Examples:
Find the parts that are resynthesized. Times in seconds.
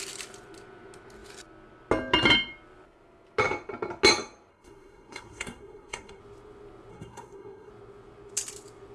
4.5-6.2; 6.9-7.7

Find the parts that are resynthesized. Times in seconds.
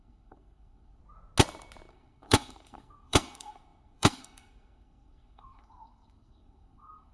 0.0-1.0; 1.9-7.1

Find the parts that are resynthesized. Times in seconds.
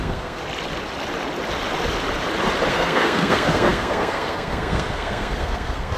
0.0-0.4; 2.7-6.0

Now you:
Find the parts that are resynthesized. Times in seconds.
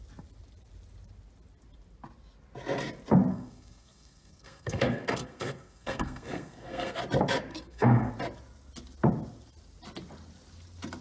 3.3-7.0; 7.5-8.1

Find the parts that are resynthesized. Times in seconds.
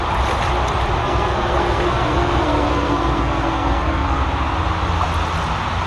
1.0-4.2